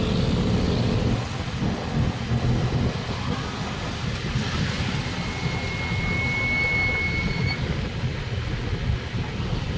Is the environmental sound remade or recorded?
recorded